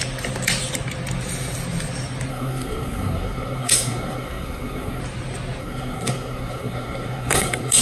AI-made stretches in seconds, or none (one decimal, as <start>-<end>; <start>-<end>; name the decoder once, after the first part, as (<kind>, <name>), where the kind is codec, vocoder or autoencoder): 2.3-5.0 (codec, SNAC); 5.6-7.8